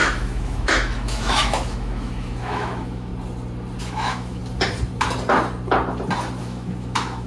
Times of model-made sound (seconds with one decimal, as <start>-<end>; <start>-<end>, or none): 0.0-3.1; 3.8-4.4; 6.4-7.3